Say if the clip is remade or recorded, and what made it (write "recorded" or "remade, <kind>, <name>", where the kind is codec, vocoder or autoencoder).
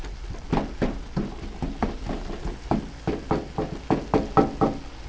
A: recorded